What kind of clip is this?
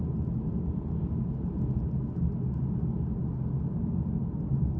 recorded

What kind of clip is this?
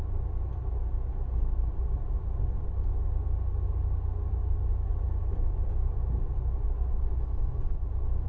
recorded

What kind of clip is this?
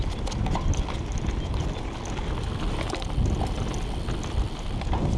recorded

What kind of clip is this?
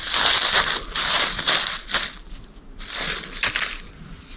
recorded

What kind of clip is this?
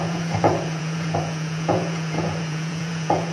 remade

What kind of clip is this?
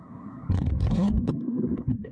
remade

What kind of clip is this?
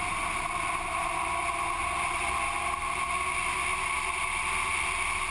recorded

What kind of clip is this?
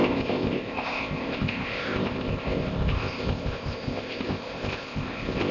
remade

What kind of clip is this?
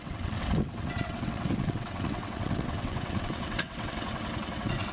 remade